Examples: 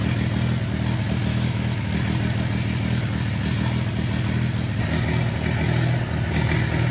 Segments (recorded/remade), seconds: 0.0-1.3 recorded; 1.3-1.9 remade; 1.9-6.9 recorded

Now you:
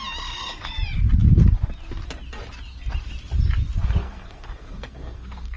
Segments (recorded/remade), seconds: 0.0-4.0 recorded; 4.0-5.6 remade

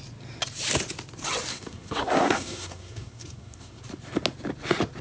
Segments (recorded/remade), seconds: 0.0-1.5 recorded; 1.5-3.8 remade; 3.8-5.0 recorded

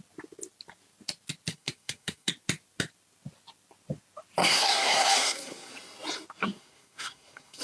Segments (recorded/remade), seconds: 0.0-1.5 recorded; 1.5-2.3 remade; 2.3-4.4 recorded; 4.4-5.7 remade; 5.7-6.4 recorded; 6.4-7.6 remade

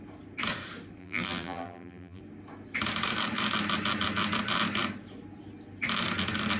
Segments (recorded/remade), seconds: 0.0-1.0 recorded; 1.0-2.2 remade; 2.2-6.6 recorded

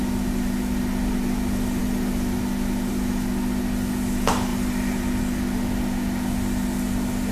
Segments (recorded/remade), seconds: 0.0-7.3 recorded

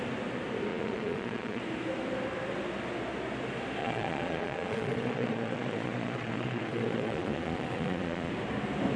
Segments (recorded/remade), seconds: 0.0-0.7 recorded; 0.7-1.6 remade; 1.6-3.8 recorded; 3.8-8.3 remade; 8.3-9.0 recorded